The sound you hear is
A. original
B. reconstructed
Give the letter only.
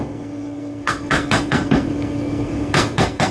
B